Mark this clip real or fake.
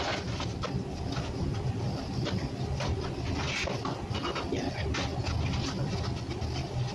real